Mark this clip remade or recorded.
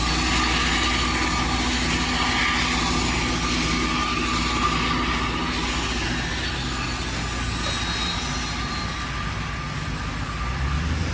recorded